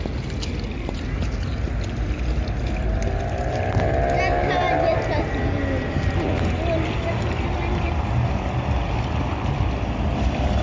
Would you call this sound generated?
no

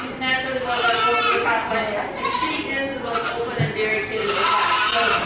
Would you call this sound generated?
no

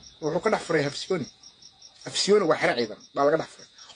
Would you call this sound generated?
yes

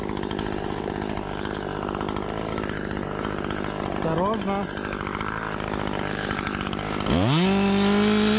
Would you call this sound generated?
no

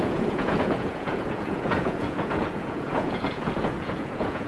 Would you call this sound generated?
yes